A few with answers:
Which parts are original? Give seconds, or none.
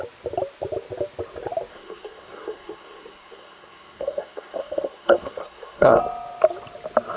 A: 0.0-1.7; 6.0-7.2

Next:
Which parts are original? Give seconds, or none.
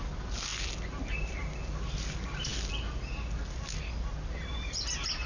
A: 0.0-5.3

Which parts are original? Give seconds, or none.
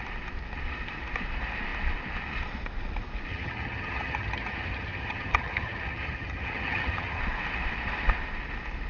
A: 0.0-3.3; 7.2-8.9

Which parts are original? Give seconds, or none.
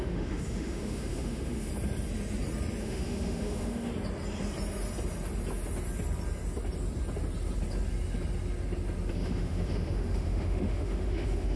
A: 1.7-2.8; 3.9-9.1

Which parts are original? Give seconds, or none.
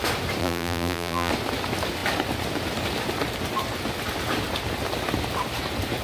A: 0.0-0.4; 1.3-6.0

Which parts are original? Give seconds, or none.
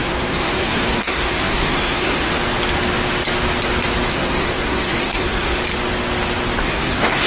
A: 2.3-4.1; 5.6-6.6